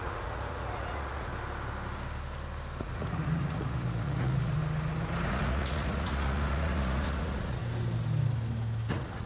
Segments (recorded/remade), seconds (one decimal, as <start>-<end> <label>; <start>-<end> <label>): 0.0-1.3 remade; 1.3-2.8 recorded; 2.8-4.6 remade; 4.6-5.3 recorded; 5.3-7.6 remade; 7.6-8.9 recorded; 8.9-9.3 remade